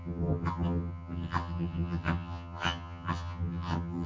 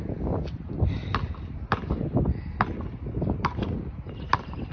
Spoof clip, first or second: first